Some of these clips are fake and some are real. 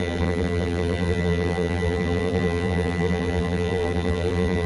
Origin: fake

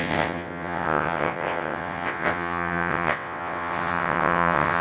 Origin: fake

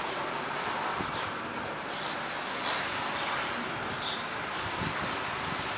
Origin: real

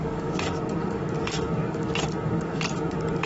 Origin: fake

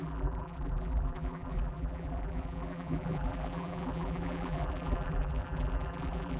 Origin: fake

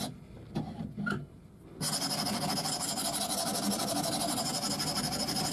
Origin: real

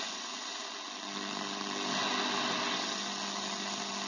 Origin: real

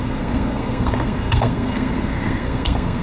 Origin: fake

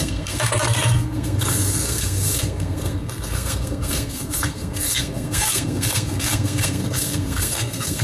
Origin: fake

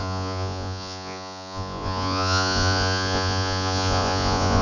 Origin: fake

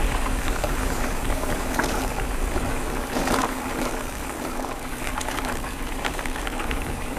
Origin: fake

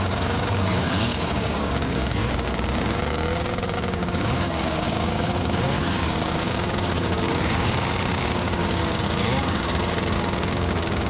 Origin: fake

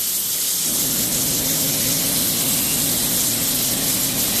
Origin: real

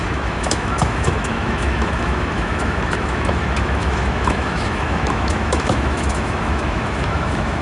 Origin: fake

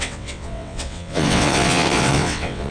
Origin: fake